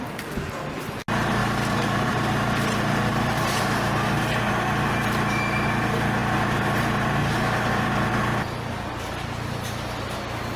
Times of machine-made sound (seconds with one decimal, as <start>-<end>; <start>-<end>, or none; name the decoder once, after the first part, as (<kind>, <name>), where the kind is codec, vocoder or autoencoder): 1.4-4.2 (vocoder, BigVGAN v2)